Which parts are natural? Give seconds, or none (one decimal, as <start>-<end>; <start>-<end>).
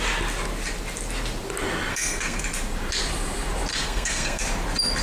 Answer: 0.0-1.9; 2.4-3.7; 4.4-5.0